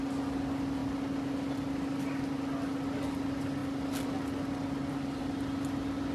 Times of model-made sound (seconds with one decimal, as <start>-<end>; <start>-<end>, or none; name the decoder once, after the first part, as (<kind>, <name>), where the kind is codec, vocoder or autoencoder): none